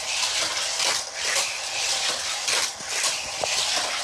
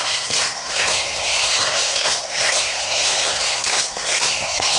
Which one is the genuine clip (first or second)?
first